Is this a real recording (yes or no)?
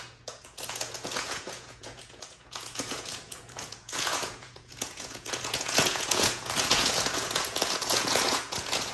no